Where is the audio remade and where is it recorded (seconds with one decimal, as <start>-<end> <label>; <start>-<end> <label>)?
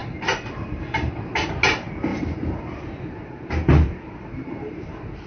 0.0-1.6 remade; 1.6-2.1 recorded; 2.1-5.3 remade